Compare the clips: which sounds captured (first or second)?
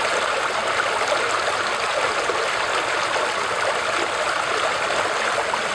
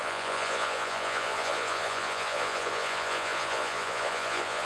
first